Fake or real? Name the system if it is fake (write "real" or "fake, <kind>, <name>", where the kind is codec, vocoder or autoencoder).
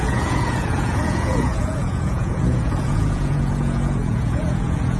fake, vocoder, Vocos